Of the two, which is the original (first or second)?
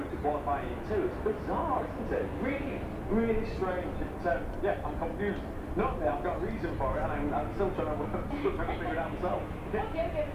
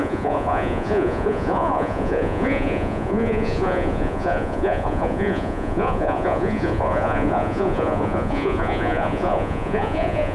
first